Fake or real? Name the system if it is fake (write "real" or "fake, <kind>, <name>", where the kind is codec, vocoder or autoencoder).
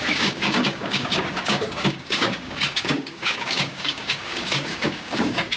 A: fake, codec, DAC